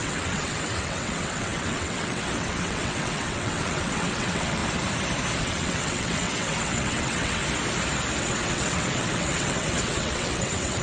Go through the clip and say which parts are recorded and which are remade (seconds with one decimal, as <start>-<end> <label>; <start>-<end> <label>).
0.0-4.6 remade; 4.6-5.4 recorded; 5.4-7.4 remade; 7.4-8.2 recorded; 8.2-10.8 remade